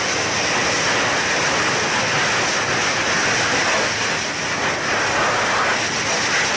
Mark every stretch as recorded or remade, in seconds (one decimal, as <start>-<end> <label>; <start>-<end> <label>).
0.0-6.6 recorded